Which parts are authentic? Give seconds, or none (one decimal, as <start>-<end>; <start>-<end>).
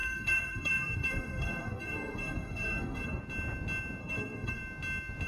3.2-4.0; 4.6-5.3